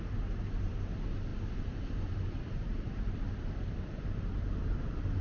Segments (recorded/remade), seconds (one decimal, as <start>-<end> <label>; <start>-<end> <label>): 0.0-1.3 recorded; 1.3-4.4 remade; 4.4-5.2 recorded